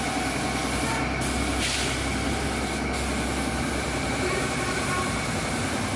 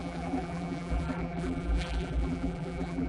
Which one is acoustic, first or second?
first